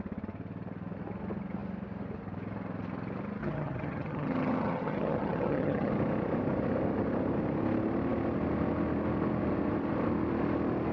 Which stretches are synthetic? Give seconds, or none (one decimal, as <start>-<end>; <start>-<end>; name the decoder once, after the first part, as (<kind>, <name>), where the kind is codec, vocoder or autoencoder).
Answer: 3.4-5.9 (vocoder, HiFi-GAN)